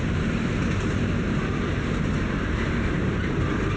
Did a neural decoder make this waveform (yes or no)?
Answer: yes